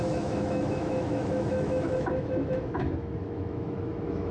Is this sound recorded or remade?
remade